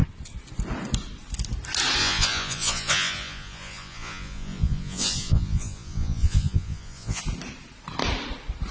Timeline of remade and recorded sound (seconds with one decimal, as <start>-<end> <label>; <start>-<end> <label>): 0.0-2.0 recorded; 2.0-7.2 remade; 7.2-8.7 recorded